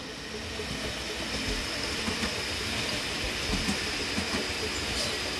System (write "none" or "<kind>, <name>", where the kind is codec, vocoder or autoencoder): none